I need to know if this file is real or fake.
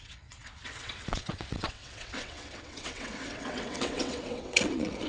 fake